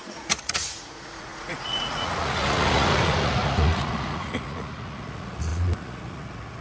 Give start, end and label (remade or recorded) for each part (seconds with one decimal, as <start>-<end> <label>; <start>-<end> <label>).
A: 0.0-6.6 remade